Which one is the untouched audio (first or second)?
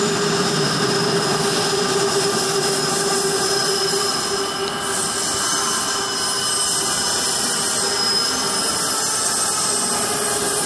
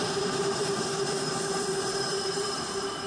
first